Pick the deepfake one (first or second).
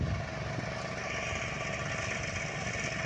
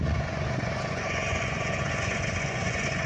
second